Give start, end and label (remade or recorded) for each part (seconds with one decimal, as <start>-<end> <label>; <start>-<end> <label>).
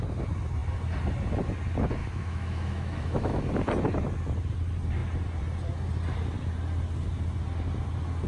0.0-2.0 recorded; 2.0-3.4 remade; 3.4-8.3 recorded